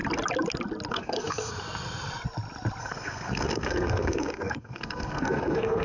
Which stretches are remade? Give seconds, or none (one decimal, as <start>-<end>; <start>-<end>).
0.9-1.5; 2.8-5.8

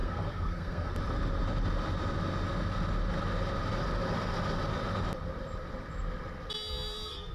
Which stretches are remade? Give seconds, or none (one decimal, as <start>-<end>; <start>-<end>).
0.0-0.9

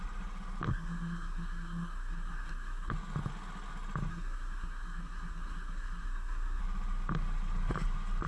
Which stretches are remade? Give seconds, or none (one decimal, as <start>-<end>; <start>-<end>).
0.7-2.9; 4.1-6.6